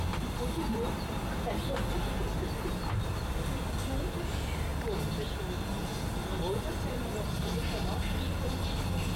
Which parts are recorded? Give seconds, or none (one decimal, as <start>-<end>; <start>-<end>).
0.0-9.2